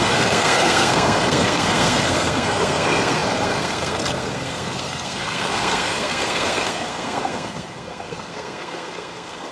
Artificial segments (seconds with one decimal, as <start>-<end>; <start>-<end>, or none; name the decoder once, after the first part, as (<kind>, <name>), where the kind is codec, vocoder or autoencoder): 0.0-9.5 (codec, SNAC)